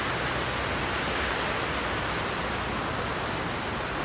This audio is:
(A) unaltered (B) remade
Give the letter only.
A